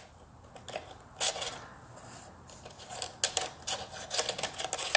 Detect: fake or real real